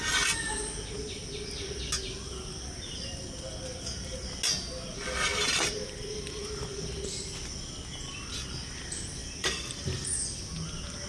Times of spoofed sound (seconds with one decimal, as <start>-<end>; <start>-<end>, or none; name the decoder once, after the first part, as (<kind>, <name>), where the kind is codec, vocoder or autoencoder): 5.3-6.9 (vocoder, BigVGAN v2); 9.2-10.4